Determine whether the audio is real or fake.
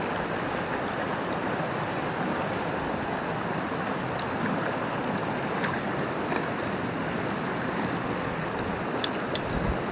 real